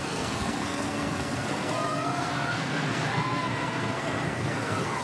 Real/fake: fake